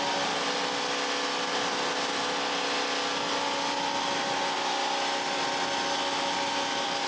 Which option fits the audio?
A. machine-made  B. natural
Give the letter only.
B